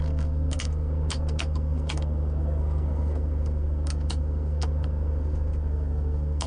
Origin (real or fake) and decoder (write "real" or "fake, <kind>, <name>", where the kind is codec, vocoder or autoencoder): fake, codec, SNAC